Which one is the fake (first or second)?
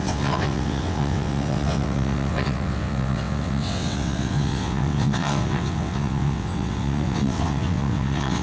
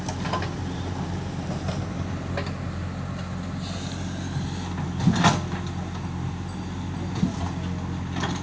first